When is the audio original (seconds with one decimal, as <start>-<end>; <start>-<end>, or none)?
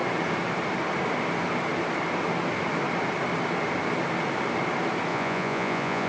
0.0-5.1